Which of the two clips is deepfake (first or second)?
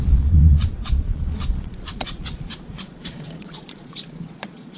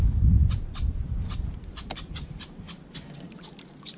first